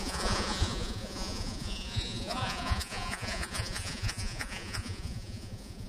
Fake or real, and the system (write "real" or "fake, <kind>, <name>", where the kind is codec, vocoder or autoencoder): fake, vocoder, Vocos